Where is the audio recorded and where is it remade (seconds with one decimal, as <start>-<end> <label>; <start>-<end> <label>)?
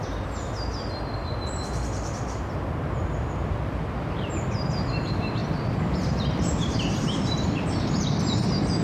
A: 0.0-1.2 recorded; 1.2-4.3 remade; 4.3-5.4 recorded; 5.4-8.0 remade; 8.0-8.8 recorded